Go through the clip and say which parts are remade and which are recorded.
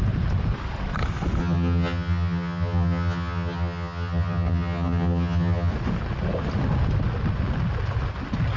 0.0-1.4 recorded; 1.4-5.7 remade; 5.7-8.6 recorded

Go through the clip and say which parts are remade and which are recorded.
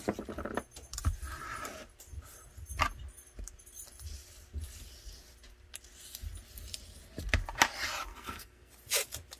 0.0-8.1 recorded; 8.1-8.7 remade; 8.7-9.4 recorded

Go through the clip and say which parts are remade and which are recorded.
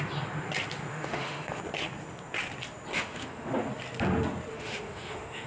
0.0-0.9 recorded; 0.9-1.6 remade; 1.6-2.9 recorded; 2.9-3.5 remade; 3.5-4.5 recorded; 4.5-5.5 remade